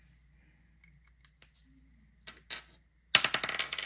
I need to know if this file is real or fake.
real